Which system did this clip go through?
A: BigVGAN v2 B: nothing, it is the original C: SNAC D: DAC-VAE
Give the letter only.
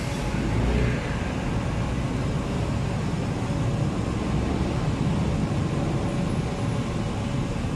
B